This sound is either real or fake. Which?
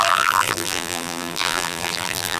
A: fake